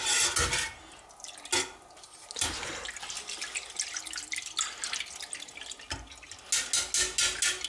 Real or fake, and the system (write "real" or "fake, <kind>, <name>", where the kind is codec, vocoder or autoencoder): real